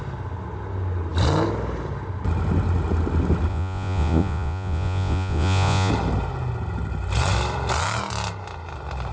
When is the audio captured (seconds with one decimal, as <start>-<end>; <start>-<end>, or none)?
0.0-3.5; 5.9-9.1